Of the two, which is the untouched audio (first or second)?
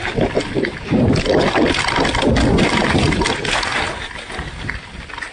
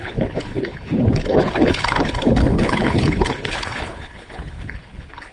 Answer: first